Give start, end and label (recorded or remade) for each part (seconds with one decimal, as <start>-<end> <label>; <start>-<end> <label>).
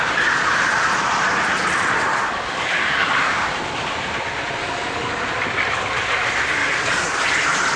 0.0-2.1 recorded; 2.1-3.5 remade; 3.5-4.6 recorded; 4.6-5.2 remade; 5.2-6.6 recorded; 6.6-7.2 remade; 7.2-7.8 recorded